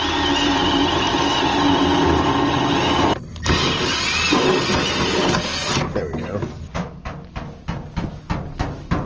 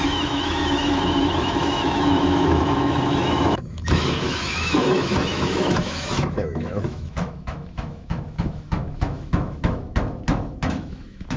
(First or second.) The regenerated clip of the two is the second